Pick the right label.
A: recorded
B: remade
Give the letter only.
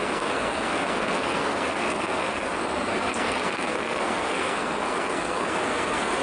B